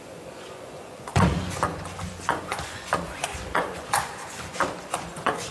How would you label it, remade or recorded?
remade